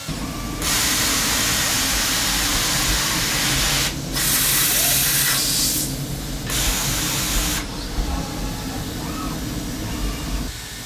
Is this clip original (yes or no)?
yes